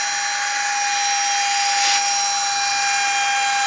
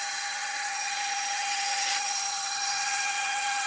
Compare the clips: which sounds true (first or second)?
first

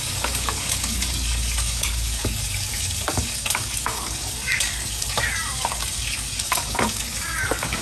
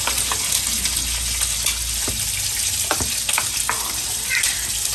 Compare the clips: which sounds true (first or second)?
second